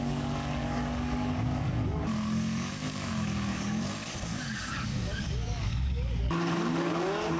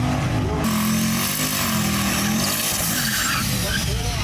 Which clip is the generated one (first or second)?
first